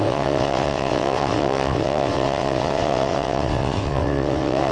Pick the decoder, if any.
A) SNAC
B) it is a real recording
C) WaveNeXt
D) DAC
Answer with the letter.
C